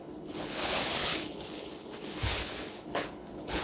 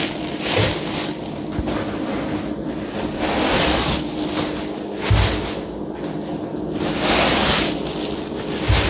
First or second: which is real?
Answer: second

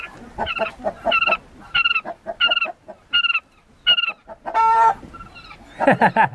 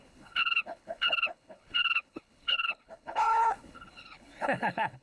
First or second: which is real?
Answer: first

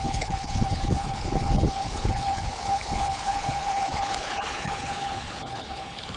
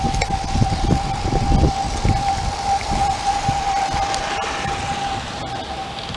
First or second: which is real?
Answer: second